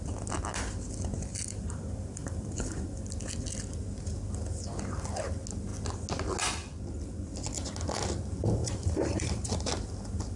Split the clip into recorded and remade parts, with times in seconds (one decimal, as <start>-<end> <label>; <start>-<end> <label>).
0.0-1.3 recorded; 1.3-3.0 remade; 3.0-8.6 recorded; 8.6-9.7 remade; 9.7-10.4 recorded